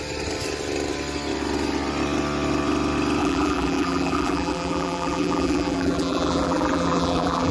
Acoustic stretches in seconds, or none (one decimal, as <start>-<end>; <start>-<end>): 0.0-3.2